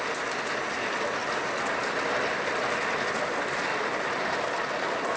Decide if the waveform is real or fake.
real